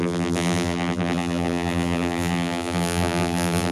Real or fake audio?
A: fake